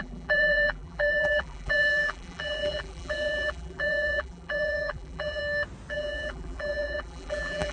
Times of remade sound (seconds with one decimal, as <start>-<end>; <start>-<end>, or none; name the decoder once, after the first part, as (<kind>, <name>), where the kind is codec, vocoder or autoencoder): 0.0-5.4 (vocoder, BigVGAN v2); 5.9-7.7